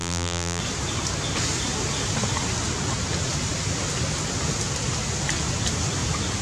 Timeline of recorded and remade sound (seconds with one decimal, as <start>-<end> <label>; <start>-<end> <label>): 0.0-0.6 remade; 0.6-6.4 recorded